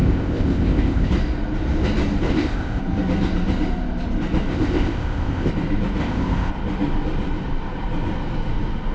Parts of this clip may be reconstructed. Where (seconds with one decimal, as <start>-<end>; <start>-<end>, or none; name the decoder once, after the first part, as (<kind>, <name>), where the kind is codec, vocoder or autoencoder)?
0.0-1.1 (codec, ZipCodec); 2.3-2.8; 4.5-5.5; 6.0-6.5